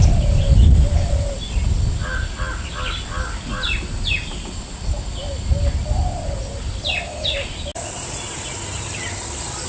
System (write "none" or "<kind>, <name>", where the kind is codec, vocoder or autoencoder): none